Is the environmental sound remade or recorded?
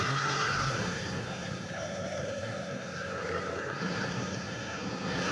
remade